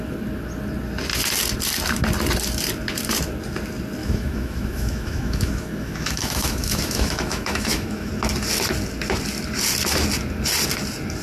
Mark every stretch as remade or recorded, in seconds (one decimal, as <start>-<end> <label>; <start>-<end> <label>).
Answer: 0.0-4.0 recorded; 4.0-8.1 remade; 8.1-11.2 recorded